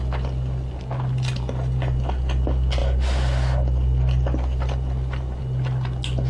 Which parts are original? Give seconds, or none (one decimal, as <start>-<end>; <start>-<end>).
0.0-6.3